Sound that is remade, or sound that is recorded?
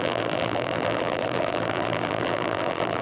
remade